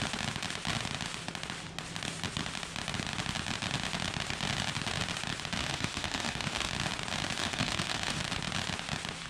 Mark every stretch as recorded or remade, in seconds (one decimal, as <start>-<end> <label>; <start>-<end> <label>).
0.0-5.6 recorded; 5.6-6.7 remade; 6.7-7.4 recorded; 7.4-8.2 remade; 8.2-9.3 recorded